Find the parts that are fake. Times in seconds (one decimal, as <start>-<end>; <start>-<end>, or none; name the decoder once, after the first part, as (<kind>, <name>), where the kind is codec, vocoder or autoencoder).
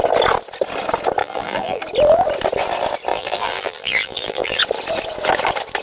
1.2-1.8 (vocoder, BigVGAN v2); 3.1-4.6